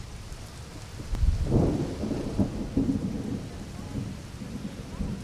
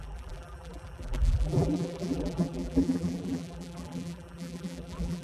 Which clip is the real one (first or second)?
first